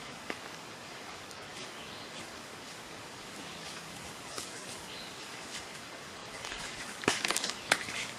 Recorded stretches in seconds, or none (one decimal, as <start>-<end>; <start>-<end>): none